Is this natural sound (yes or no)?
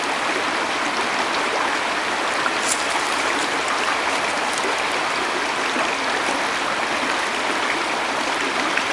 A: yes